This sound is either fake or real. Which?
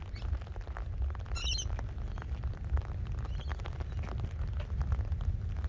real